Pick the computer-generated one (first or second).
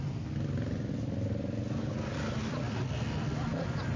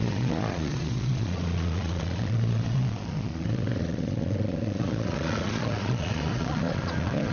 second